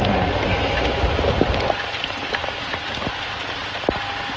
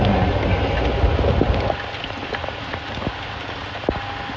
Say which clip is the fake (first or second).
first